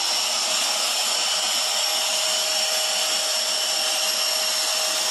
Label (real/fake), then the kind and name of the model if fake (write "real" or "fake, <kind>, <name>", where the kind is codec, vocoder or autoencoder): real